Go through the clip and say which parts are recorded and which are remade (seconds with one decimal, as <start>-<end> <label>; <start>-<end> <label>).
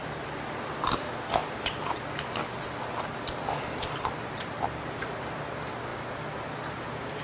0.0-3.0 recorded; 3.0-5.9 remade; 5.9-7.2 recorded